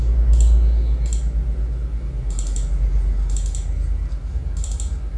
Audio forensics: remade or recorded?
recorded